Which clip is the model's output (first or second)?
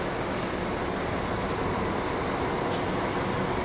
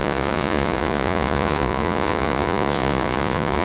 second